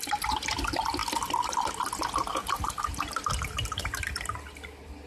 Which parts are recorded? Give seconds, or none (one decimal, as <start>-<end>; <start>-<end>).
0.0-5.1